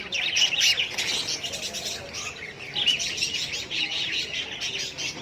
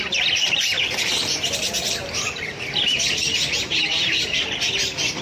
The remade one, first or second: second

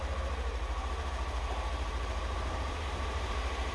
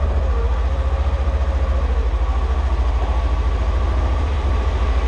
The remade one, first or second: first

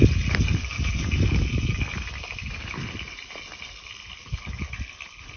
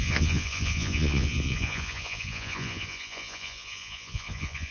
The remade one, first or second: second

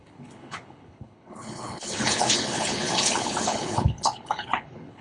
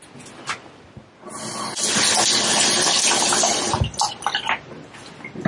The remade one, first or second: first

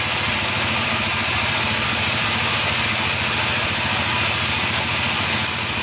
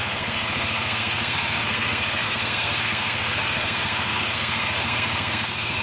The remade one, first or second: second